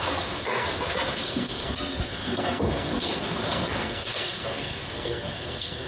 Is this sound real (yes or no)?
no